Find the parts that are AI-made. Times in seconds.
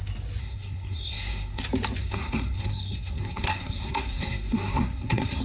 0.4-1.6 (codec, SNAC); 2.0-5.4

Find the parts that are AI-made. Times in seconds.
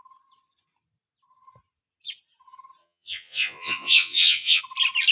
2.8-4.6 (vocoder, Vocos)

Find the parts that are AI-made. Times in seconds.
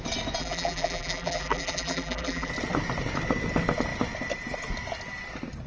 0.4-2.5 (vocoder, BigVGAN v2)